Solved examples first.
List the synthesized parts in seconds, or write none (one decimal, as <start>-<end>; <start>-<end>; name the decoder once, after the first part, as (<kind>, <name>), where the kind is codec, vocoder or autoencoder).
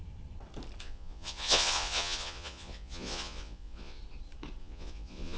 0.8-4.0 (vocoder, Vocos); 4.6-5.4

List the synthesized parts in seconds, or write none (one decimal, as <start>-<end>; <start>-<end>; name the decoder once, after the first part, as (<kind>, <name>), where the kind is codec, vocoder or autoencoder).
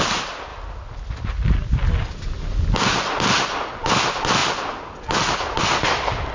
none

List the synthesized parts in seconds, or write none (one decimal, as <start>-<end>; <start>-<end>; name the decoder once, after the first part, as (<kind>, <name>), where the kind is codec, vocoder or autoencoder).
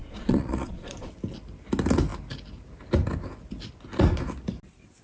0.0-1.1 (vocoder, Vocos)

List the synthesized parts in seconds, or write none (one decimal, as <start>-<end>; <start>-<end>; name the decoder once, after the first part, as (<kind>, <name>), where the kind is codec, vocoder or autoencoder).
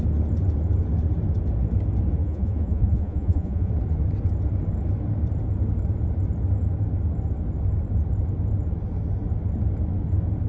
2.2-3.7 (vocoder, Vocos)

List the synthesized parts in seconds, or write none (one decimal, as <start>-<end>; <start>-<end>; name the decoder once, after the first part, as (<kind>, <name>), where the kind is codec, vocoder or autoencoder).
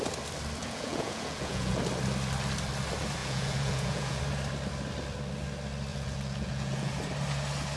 0.6-1.8 (vocoder, Vocos); 3.2-4.2; 5.9-6.9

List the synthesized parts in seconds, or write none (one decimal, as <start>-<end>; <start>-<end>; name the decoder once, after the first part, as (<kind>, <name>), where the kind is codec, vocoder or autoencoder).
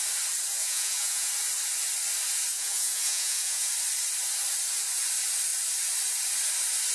0.6-1.3 (vocoder, Vocos); 2.5-3.7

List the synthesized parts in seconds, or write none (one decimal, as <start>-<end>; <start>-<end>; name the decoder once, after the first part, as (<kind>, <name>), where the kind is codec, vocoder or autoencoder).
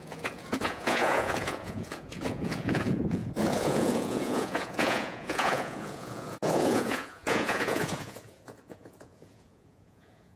0.0-10.4 (vocoder, Vocos)